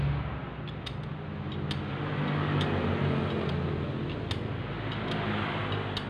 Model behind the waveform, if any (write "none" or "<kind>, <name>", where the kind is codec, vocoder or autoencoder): none